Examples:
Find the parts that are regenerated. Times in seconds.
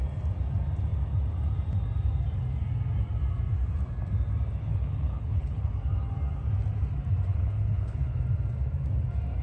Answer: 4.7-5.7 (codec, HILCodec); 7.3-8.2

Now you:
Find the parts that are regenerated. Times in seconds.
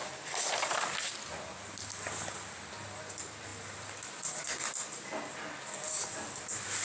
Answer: none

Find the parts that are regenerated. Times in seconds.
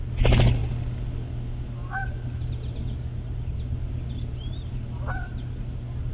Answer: none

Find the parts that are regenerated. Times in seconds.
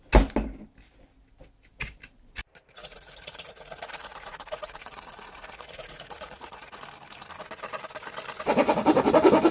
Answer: 2.8-6.8 (vocoder, Vocos)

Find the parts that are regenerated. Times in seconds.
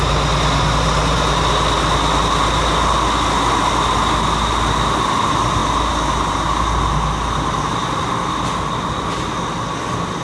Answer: none